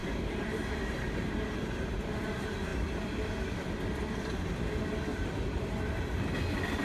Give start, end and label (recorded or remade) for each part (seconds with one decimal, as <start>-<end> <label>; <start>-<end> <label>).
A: 0.0-1.4 remade; 1.4-2.7 recorded; 2.7-4.6 remade; 4.6-5.1 recorded; 5.1-6.1 remade; 6.1-6.8 recorded